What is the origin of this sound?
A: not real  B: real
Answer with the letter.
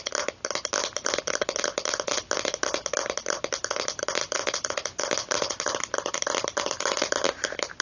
B